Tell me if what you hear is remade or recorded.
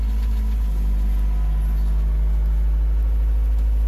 recorded